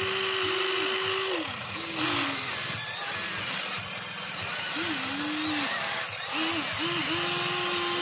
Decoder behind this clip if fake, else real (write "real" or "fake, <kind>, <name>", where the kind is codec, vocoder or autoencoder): real